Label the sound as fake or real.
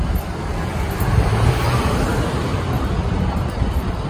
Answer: real